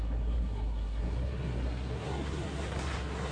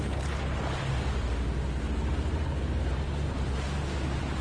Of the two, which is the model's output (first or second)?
first